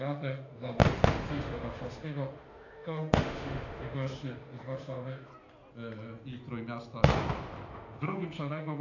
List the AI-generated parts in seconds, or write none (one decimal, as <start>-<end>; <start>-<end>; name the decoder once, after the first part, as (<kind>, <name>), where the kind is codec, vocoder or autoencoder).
0.0-0.8 (autoencoder, DAC-VAE); 1.3-5.3; 7.7-8.8